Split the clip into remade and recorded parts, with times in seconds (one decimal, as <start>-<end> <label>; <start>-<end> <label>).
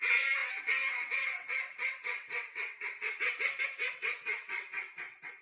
0.0-5.4 remade